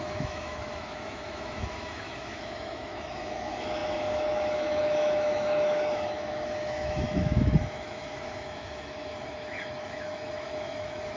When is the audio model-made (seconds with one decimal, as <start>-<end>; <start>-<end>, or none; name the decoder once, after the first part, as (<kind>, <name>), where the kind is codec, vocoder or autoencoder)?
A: 0.0-11.2 (autoencoder, DAC-VAE)